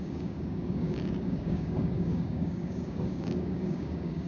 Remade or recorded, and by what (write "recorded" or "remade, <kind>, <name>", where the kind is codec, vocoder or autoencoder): remade, codec, DAC